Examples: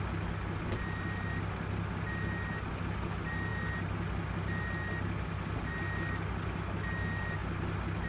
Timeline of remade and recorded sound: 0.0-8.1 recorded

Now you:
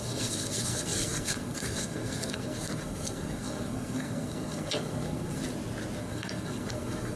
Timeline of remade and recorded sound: 0.0-5.4 remade; 5.4-6.0 recorded; 6.0-7.2 remade

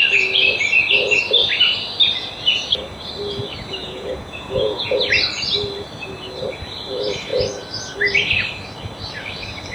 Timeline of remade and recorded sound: 0.0-3.8 recorded; 3.8-5.0 remade; 5.0-9.7 recorded

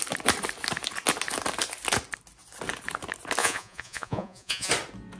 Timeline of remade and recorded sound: 0.0-3.4 recorded; 3.4-4.7 remade; 4.7-5.2 recorded

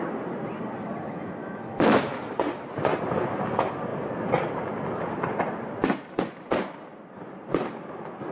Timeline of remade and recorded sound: 0.0-1.4 recorded; 1.4-2.1 remade; 2.1-8.3 recorded

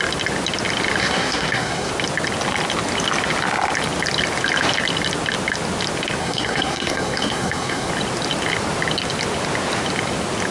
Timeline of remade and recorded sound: 0.0-1.0 recorded; 1.0-1.9 remade; 1.9-6.2 recorded; 6.2-7.9 remade; 7.9-10.5 recorded